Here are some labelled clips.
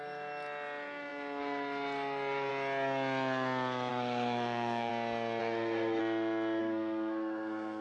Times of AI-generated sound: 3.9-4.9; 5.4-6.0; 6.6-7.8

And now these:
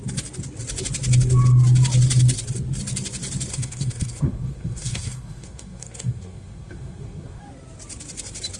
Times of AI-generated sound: 3.5-7.4

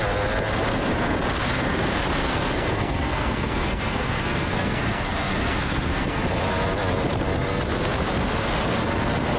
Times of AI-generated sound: 2.2-6.2

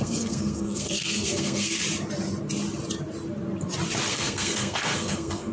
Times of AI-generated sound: 0.0-1.8; 4.1-5.5

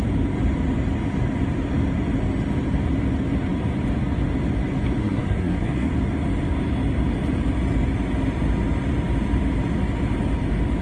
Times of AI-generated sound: 5.0-5.9